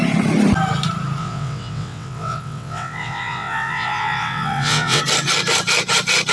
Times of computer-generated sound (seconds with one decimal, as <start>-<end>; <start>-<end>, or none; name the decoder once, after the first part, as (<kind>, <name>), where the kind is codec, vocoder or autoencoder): 1.2-5.0 (vocoder, WaveNeXt)